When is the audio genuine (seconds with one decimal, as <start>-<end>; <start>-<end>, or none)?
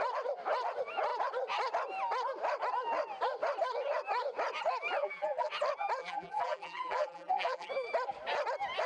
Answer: 0.0-5.0; 5.5-6.0; 7.7-8.9